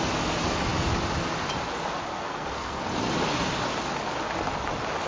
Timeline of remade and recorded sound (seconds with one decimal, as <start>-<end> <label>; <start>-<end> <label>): 0.0-2.1 recorded; 2.1-2.8 remade; 2.8-5.1 recorded